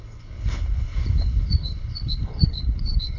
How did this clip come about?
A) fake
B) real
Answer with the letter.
A